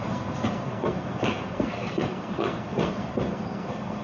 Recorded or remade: remade